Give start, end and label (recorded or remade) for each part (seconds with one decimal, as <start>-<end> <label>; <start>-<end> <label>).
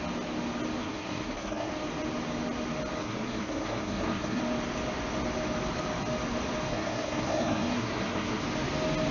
0.0-0.8 recorded; 0.8-1.7 remade; 1.7-3.0 recorded; 3.0-4.4 remade; 4.4-6.7 recorded; 6.7-8.4 remade; 8.4-9.1 recorded